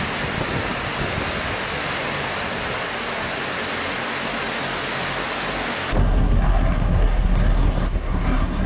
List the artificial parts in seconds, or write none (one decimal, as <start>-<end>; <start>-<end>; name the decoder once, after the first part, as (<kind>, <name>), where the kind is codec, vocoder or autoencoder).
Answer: 6.0-8.7 (codec, SNAC)